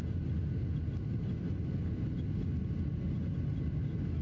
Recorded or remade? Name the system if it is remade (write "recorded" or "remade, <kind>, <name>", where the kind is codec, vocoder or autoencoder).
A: recorded